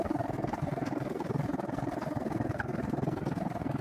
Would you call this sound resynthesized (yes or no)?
yes